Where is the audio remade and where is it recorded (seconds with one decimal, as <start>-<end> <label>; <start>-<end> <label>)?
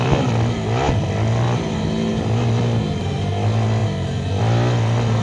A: 0.0-5.2 recorded